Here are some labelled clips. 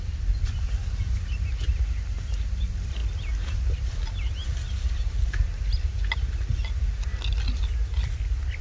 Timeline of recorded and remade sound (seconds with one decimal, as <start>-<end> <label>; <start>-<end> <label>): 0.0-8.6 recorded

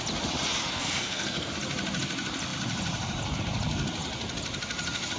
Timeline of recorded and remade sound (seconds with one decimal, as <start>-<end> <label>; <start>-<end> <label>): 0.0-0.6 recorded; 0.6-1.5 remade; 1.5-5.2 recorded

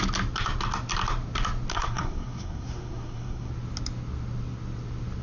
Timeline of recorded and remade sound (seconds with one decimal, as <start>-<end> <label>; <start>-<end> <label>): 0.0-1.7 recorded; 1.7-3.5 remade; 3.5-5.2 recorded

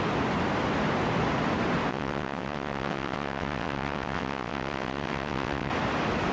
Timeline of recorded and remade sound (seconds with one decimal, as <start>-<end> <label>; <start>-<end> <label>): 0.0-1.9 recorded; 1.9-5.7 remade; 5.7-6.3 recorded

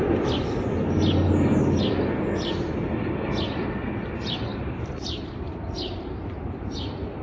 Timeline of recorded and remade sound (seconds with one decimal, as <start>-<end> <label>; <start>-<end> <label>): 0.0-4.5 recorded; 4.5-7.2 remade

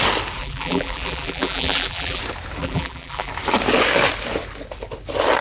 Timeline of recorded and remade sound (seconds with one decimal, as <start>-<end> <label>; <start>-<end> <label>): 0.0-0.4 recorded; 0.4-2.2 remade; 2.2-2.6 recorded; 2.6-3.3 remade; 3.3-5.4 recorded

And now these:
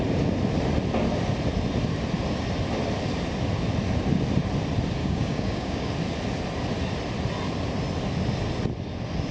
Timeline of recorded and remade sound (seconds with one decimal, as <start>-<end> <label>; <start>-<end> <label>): 0.0-5.0 recorded; 5.0-5.9 remade; 5.9-9.3 recorded

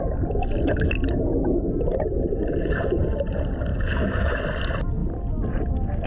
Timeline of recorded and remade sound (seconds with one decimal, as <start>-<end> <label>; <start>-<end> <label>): 0.0-3.7 recorded; 3.7-4.4 remade; 4.4-6.1 recorded